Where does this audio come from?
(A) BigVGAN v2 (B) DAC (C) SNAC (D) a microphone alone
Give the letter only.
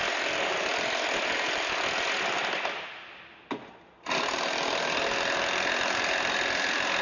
D